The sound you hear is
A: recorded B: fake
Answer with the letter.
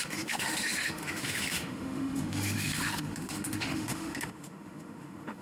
B